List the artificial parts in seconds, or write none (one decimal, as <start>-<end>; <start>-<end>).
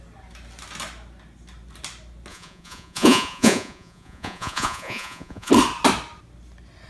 2.3-5.5